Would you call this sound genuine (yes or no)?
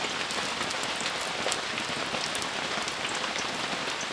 yes